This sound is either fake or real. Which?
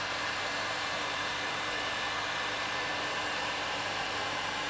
fake